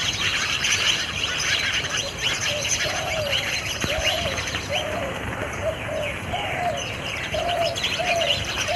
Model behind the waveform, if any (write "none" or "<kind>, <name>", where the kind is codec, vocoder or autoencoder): vocoder, BigVGAN v2